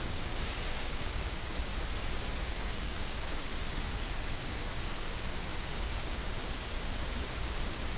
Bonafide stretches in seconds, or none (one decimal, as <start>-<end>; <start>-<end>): 1.7-2.4